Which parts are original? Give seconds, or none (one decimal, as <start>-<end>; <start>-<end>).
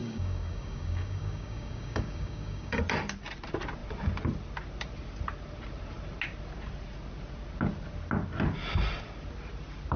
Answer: 2.8-10.0